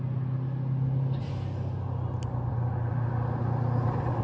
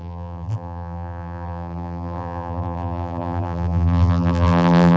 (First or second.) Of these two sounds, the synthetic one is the second